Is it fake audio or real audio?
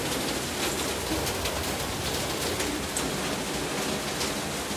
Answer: real